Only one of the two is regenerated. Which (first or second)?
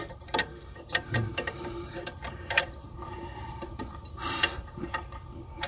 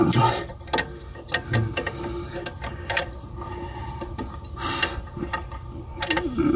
first